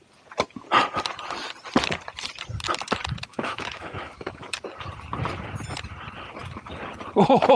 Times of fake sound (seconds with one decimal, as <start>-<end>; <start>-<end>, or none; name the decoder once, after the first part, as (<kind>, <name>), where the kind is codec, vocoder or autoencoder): 3.3-4.5 (autoencoder, DAC-VAE)